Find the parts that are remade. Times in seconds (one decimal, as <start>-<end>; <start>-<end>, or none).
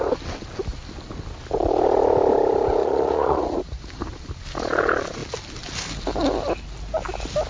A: 2.8-3.8